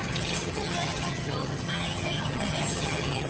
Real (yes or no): no